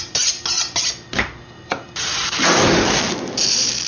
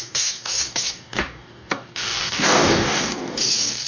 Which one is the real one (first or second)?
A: first